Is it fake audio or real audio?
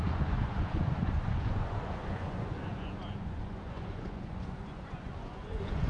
fake